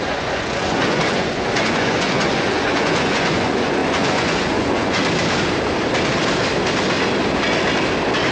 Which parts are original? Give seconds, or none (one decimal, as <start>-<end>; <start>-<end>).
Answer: 5.0-8.3